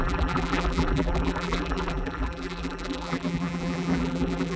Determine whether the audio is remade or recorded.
remade